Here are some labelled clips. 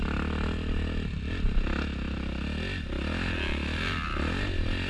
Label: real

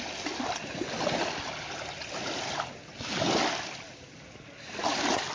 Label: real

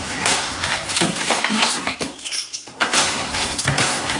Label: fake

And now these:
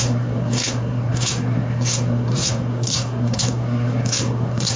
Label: fake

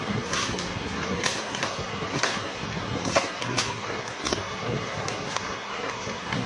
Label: fake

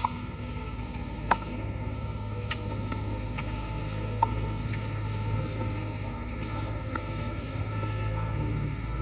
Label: fake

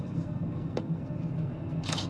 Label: fake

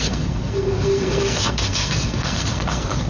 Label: fake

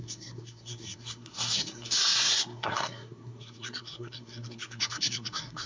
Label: fake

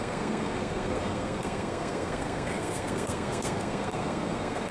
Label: fake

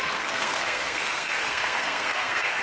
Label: fake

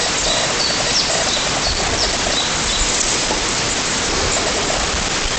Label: real